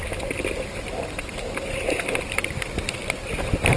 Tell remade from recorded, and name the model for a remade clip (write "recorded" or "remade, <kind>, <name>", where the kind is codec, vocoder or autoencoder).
recorded